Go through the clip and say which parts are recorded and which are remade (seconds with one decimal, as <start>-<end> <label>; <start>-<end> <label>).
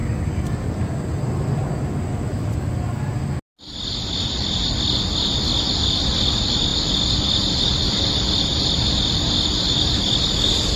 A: 0.0-10.8 recorded